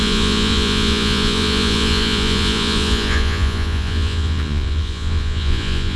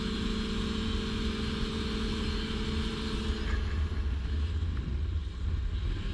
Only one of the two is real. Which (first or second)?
second